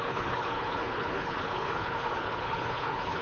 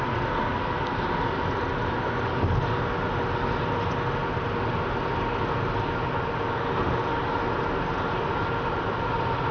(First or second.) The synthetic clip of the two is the first